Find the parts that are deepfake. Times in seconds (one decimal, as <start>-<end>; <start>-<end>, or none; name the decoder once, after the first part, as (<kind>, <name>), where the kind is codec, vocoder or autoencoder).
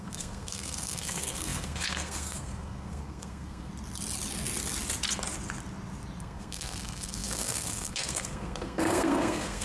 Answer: 0.0-3.7 (codec, SNAC); 6.2-9.6